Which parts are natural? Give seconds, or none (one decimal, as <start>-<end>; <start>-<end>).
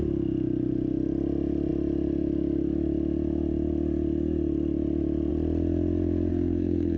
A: 0.0-6.3